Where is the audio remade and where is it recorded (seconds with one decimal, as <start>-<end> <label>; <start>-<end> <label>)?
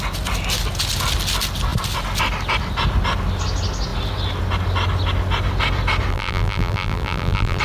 0.0-6.1 recorded; 6.1-7.6 remade